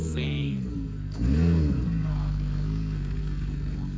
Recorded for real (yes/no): no